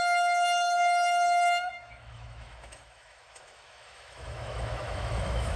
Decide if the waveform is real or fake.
fake